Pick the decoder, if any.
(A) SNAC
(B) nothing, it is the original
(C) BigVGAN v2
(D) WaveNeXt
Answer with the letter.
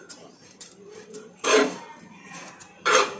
C